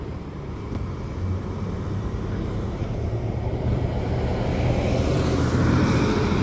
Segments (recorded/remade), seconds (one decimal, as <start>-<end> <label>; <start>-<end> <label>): 0.0-6.4 remade